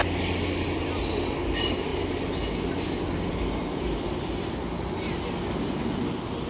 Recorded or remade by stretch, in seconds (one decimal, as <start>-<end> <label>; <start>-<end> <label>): 0.0-6.5 recorded